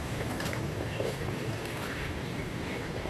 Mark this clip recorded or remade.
remade